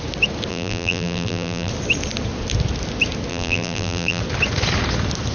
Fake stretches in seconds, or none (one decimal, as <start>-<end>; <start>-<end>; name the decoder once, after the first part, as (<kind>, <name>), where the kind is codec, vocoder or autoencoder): 0.5-1.7 (vocoder, BigVGAN v2); 3.3-4.2